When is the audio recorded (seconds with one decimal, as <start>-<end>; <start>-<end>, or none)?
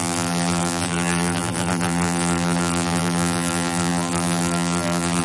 none